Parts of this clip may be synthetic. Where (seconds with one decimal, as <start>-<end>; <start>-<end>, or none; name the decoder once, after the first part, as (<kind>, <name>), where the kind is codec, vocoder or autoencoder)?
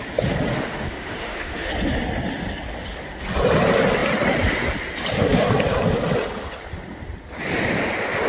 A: 0.5-1.7 (autoencoder, DAC-VAE)